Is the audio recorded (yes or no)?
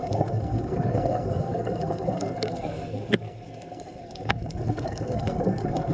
no